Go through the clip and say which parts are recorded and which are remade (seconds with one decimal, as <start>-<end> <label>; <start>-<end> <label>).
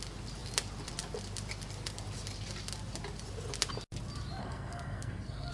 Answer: 0.0-4.4 recorded; 4.4-5.5 remade